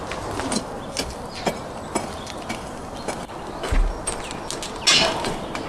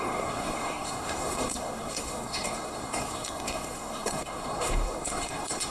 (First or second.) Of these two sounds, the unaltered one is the first